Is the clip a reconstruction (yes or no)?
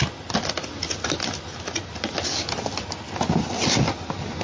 no